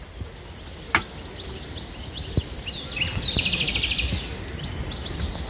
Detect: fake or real real